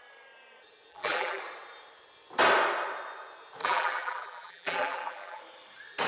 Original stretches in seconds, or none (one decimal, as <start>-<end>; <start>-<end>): 0.0-0.9; 1.4-3.6; 5.4-6.1